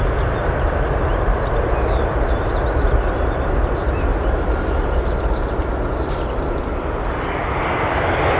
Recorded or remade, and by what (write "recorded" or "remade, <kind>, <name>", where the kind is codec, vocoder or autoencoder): recorded